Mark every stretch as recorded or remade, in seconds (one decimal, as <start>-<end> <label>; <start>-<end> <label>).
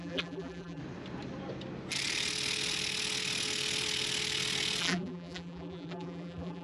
0.0-0.8 remade; 0.8-4.8 recorded; 4.8-6.6 remade